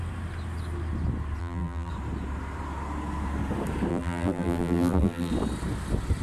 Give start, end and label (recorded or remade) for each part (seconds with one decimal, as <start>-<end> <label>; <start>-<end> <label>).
0.0-1.4 recorded; 1.4-1.9 remade; 1.9-3.9 recorded; 3.9-5.3 remade; 5.3-6.2 recorded